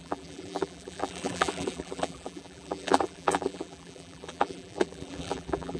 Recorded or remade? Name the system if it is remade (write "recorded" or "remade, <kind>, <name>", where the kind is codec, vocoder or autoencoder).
remade, vocoder, BigVGAN v2